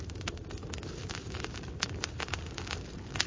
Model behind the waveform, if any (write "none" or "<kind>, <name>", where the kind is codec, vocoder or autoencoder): none